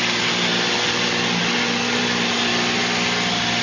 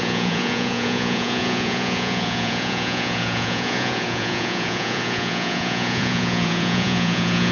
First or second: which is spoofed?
second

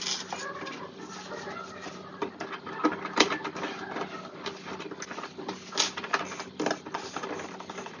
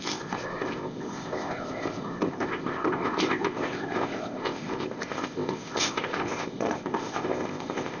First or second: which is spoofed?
second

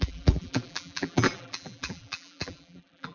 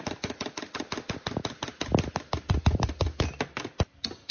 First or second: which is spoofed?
first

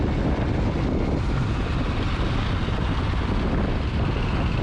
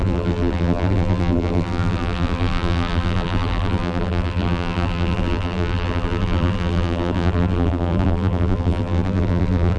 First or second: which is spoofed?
second